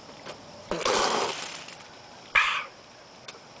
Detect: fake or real fake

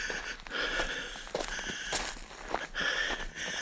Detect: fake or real real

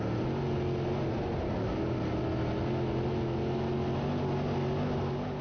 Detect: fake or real real